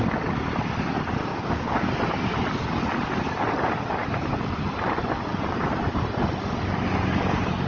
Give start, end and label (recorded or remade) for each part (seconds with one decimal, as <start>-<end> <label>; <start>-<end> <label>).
0.0-1.3 recorded; 1.3-1.9 remade; 1.9-7.7 recorded